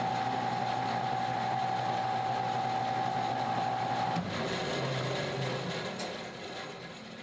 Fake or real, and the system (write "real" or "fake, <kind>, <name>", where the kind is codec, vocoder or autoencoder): real